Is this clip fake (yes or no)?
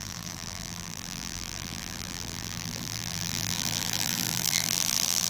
yes